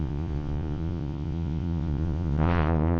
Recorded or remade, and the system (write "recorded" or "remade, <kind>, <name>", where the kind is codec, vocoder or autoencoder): remade, vocoder, Vocos